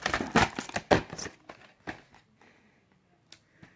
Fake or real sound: real